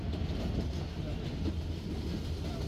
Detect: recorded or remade recorded